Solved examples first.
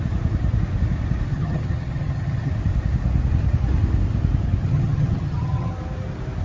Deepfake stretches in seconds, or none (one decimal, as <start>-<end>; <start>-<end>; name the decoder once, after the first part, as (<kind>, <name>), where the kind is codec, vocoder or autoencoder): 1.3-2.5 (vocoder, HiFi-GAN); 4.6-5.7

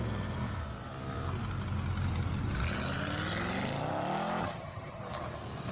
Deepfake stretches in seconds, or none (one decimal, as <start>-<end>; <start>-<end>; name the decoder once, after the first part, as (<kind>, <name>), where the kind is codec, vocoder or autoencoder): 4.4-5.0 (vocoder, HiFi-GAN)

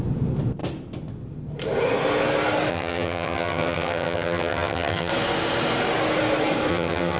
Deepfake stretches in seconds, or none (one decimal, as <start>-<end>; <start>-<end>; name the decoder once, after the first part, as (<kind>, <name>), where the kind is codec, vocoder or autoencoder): 2.7-5.1 (vocoder, HiFi-GAN); 6.7-7.2